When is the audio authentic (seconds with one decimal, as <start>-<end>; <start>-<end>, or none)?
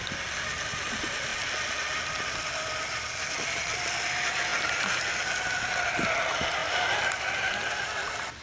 0.0-8.4